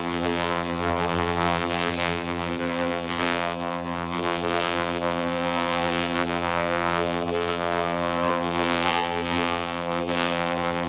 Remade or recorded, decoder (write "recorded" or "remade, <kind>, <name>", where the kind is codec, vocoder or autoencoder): remade, vocoder, BigVGAN v2